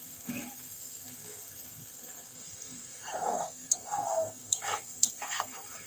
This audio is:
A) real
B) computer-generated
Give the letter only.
B